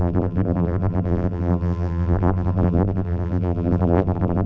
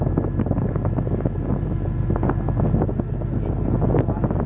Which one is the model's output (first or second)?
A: first